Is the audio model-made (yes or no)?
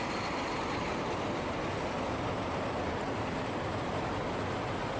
no